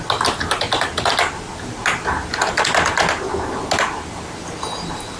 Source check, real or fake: real